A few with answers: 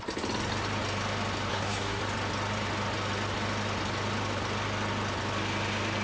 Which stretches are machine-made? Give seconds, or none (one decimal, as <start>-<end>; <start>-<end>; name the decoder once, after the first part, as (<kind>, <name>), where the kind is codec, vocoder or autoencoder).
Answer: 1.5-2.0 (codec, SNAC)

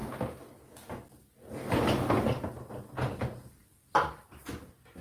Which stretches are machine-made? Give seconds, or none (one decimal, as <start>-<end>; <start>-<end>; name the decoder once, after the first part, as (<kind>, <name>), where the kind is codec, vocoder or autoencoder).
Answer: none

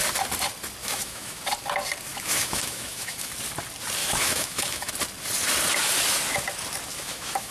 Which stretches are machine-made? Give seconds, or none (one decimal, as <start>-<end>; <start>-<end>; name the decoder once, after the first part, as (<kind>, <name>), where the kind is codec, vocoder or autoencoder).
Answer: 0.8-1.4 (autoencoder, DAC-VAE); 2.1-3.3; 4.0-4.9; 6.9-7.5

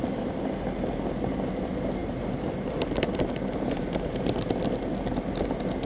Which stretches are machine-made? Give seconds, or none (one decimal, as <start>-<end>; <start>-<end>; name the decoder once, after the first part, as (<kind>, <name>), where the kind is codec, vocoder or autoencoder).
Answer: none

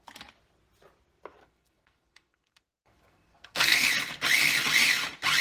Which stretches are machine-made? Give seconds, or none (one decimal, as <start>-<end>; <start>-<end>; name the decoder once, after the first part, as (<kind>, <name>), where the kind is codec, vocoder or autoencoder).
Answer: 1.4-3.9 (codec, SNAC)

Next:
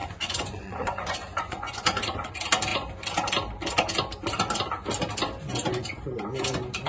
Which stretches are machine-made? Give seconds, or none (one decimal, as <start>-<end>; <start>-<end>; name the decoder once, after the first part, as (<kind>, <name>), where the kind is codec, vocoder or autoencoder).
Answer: 0.0-2.3 (vocoder, Vocos)

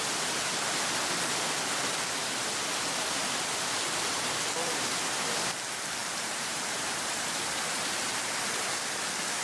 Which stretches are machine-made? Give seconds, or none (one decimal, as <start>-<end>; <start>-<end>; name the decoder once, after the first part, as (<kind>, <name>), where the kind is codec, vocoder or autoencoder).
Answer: 6.0-8.2 (vocoder, BigVGAN v2)

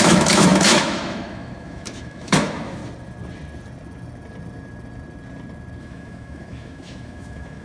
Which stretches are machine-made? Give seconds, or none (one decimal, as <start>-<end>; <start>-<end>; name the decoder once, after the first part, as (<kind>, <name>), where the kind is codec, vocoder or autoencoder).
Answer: 0.0-2.8 (autoencoder, DAC-VAE); 5.8-7.6